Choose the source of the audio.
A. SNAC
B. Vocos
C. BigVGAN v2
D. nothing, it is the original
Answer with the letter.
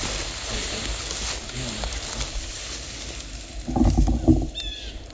D